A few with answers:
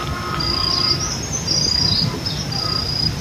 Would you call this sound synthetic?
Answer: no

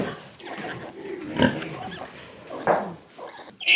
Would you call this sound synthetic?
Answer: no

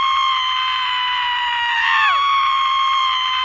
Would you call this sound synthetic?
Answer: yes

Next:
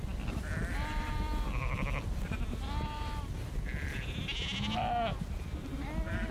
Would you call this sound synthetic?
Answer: no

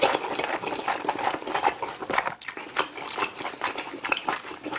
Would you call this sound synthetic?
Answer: no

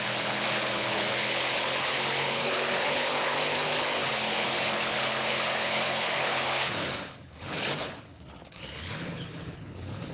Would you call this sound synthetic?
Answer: yes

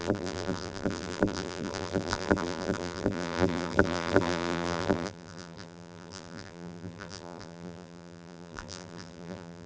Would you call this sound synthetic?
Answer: yes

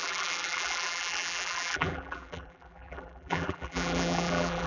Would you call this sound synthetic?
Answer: yes